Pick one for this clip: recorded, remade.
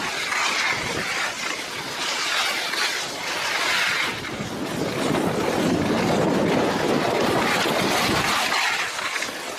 recorded